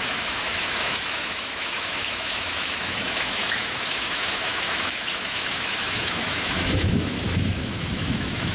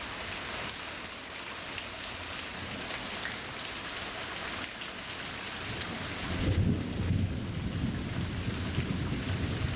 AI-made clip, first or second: first